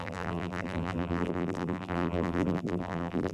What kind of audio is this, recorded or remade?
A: remade